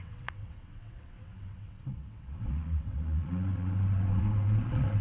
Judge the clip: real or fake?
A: fake